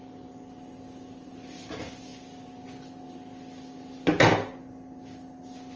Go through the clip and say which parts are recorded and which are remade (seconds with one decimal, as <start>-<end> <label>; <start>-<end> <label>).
0.0-5.8 recorded